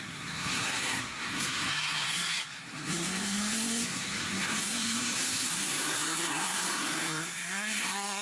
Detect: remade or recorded remade